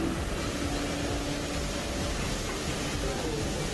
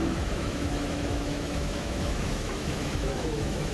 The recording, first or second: first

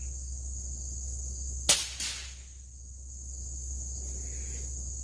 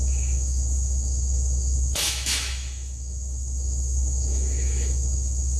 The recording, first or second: first